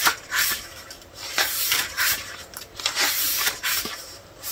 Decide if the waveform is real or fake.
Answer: fake